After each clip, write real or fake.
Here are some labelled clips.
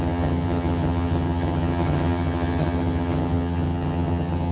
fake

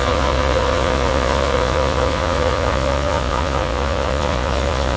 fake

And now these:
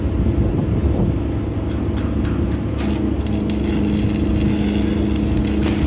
real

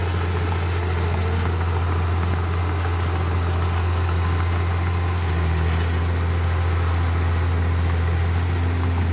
real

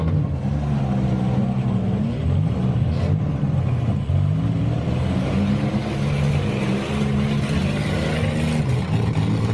real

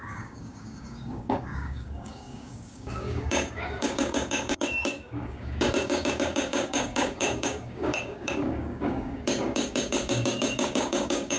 fake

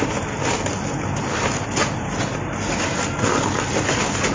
real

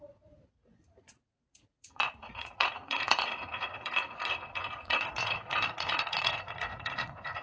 fake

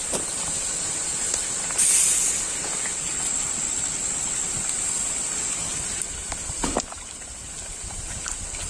real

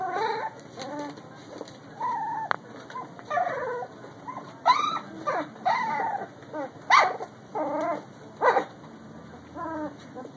real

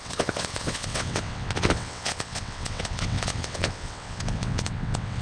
fake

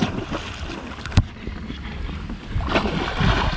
real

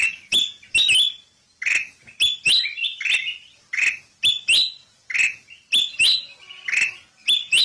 real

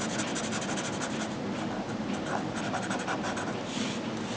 real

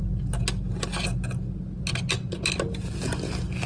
real